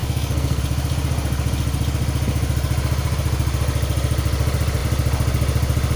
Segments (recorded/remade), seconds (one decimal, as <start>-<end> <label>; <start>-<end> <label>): 0.0-0.6 remade; 0.6-6.0 recorded

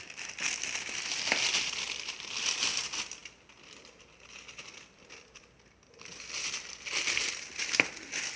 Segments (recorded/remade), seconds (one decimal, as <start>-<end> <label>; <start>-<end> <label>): 0.0-8.4 recorded

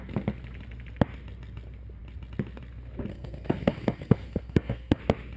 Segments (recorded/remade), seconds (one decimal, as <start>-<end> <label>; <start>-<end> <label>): 0.0-3.1 recorded; 3.1-5.0 remade; 5.0-5.4 recorded